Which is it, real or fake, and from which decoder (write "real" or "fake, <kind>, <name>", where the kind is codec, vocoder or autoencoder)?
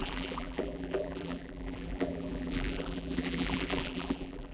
fake, vocoder, BigVGAN v2